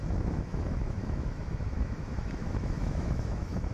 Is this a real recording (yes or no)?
no